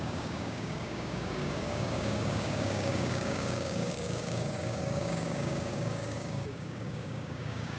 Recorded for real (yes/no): no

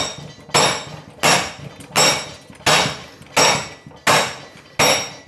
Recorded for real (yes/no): yes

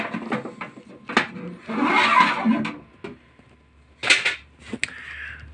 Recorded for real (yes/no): yes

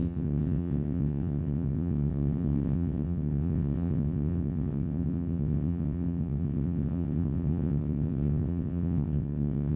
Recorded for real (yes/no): no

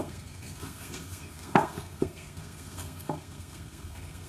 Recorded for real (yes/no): no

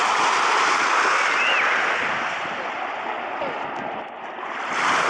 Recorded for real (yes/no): yes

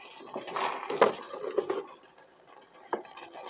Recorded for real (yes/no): yes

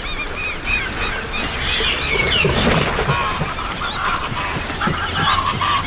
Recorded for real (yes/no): yes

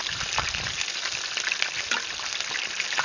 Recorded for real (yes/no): yes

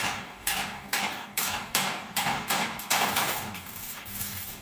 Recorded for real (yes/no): no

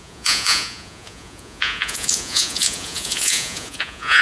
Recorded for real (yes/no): no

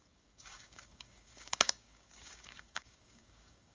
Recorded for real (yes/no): no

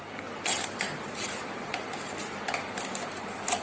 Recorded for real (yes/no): yes